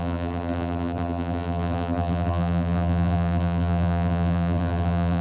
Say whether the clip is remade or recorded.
remade